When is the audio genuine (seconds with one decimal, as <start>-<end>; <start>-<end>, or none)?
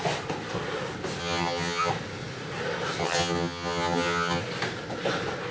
0.0-1.2; 1.9-3.0; 4.4-5.5